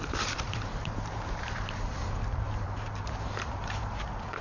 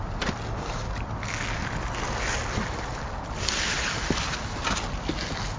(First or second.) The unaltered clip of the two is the second